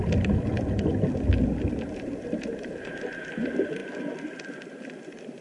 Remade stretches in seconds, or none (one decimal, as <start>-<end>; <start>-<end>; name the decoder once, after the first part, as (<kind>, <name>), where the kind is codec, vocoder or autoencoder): 0.0-0.9 (vocoder, BigVGAN v2); 3.8-5.4